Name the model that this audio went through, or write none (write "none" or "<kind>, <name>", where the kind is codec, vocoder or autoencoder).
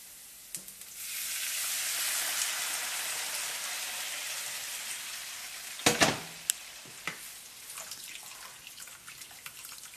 none